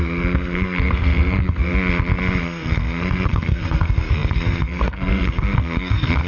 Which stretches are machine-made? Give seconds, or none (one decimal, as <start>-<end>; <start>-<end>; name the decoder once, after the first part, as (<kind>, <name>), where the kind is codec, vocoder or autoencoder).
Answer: 0.0-1.7 (codec, SNAC); 2.4-6.3